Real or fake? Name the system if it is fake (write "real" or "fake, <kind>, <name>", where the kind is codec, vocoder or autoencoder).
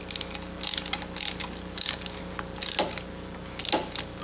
real